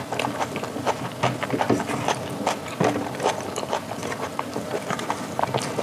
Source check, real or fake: real